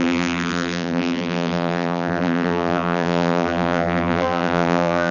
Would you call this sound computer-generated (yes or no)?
yes